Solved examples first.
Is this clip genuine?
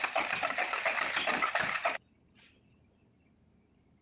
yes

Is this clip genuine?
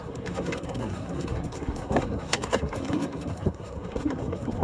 no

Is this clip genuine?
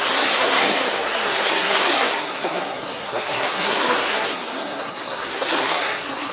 no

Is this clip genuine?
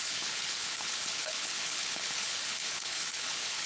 no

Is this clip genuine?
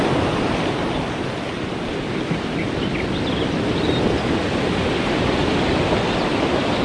yes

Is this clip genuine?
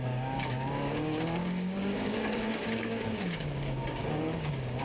no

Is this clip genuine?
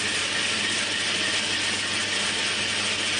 yes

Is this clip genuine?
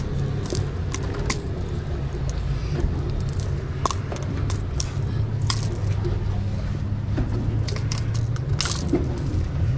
yes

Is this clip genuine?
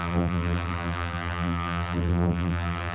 no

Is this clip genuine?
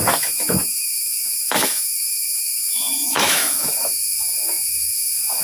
no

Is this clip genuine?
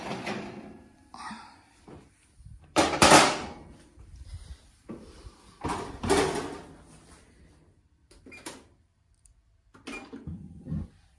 no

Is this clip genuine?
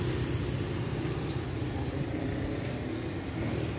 yes